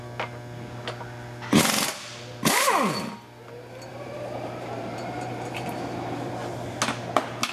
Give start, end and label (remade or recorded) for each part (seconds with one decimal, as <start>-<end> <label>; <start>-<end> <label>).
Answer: 0.0-3.9 recorded; 3.9-6.3 remade; 6.3-7.5 recorded